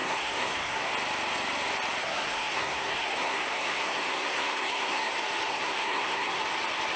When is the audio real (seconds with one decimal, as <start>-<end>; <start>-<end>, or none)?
0.9-2.0; 5.1-5.5; 6.4-7.0